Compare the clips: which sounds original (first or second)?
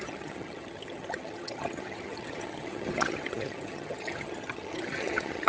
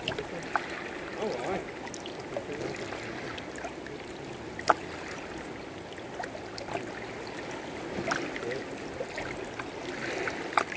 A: second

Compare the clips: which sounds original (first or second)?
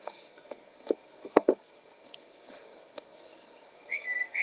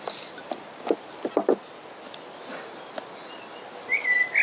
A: second